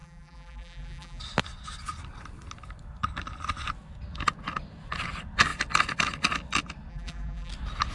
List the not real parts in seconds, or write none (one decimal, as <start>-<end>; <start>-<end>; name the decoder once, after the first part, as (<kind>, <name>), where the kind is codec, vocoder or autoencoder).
0.0-1.2 (vocoder, BigVGAN v2); 6.9-7.5

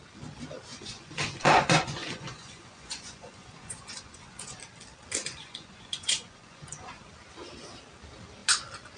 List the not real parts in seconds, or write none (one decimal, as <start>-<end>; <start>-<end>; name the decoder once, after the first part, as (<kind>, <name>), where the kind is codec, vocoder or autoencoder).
0.7-4.6 (vocoder, Vocos); 5.2-7.0